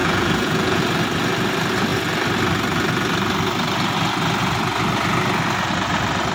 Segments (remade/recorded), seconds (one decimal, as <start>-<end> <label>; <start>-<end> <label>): 0.0-0.8 remade; 0.8-6.3 recorded